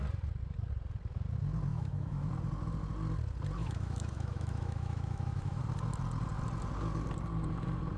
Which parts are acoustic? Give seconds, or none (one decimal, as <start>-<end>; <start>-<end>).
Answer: 0.0-1.7; 2.3-3.6; 5.6-8.0